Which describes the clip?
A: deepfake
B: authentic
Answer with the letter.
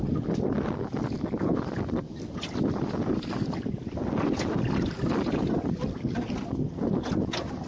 B